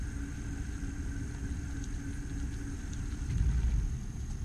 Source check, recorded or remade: recorded